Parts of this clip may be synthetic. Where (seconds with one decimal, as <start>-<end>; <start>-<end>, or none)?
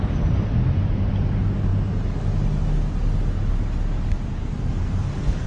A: 4.4-5.5